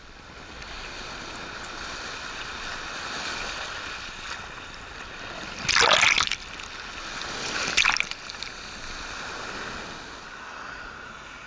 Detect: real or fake real